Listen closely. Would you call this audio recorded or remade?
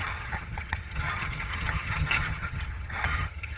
remade